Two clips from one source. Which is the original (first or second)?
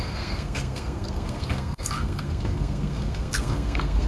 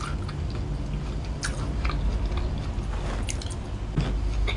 second